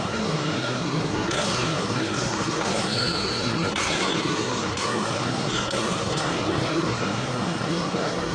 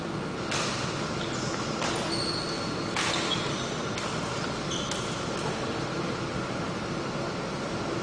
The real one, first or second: second